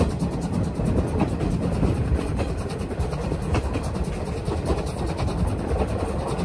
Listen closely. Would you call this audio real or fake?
real